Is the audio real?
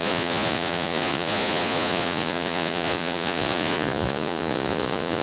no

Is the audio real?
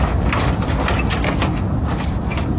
yes